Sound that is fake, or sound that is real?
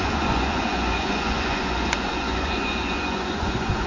fake